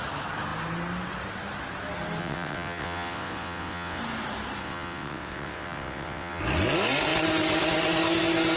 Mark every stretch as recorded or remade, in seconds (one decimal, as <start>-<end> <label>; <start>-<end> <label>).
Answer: 0.0-2.2 recorded; 2.2-4.0 remade; 4.0-4.6 recorded; 4.6-6.4 remade; 6.4-8.6 recorded